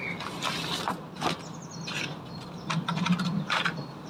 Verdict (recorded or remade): recorded